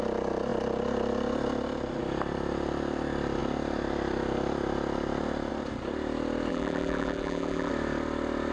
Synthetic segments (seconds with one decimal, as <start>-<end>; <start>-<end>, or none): 6.5-7.7